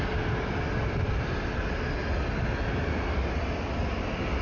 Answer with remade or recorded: recorded